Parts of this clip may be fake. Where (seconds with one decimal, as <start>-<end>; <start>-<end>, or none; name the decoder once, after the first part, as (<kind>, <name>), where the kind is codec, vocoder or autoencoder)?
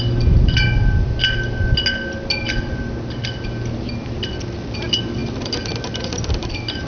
none